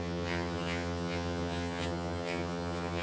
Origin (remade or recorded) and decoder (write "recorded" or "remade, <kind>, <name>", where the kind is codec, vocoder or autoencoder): remade, vocoder, HiFi-GAN